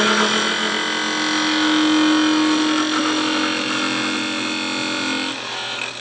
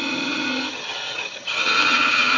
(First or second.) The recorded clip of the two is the first